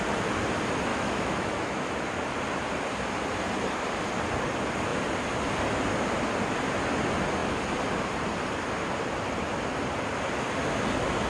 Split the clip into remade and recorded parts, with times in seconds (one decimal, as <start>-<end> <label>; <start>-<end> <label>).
0.0-0.9 recorded; 0.9-1.9 remade; 1.9-11.3 recorded